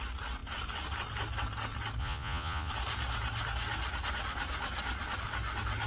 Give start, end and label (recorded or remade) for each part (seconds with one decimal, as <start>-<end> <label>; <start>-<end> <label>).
0.0-2.0 recorded; 2.0-2.7 remade; 2.7-5.9 recorded